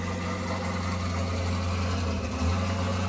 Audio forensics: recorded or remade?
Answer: recorded